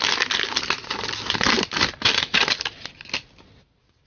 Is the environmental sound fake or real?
real